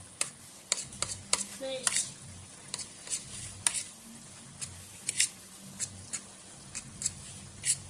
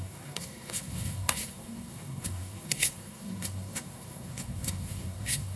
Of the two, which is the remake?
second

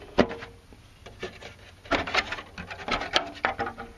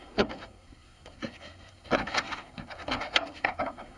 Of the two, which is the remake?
second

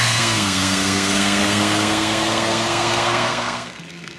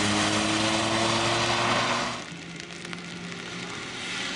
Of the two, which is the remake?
first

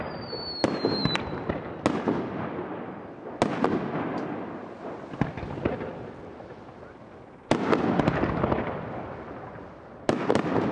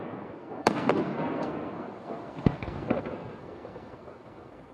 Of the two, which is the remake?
second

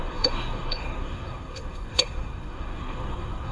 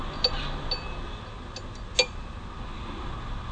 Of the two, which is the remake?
first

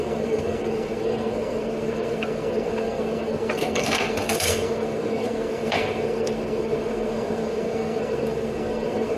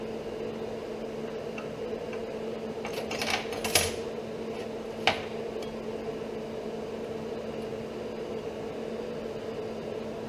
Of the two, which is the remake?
first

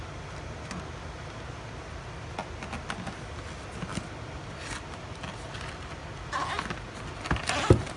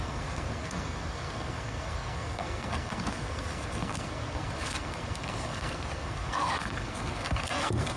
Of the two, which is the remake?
second